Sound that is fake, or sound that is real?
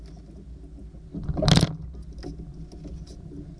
real